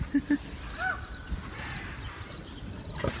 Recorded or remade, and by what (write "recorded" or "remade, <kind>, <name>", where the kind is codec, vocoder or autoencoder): remade, vocoder, BigVGAN v2